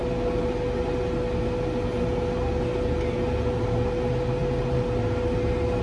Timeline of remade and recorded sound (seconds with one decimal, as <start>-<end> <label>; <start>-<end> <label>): 0.0-5.8 recorded